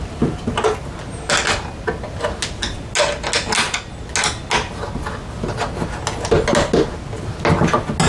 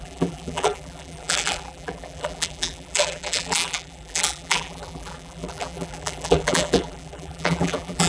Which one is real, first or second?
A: first